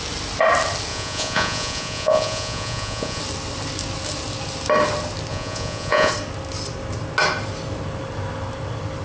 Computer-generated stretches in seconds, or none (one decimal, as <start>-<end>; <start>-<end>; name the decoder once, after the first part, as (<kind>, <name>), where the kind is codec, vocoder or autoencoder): 0.9-3.2 (vocoder, Vocos); 5.3-6.1